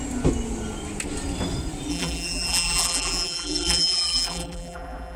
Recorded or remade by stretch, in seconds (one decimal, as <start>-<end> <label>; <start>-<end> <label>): 0.0-1.9 recorded; 1.9-5.2 remade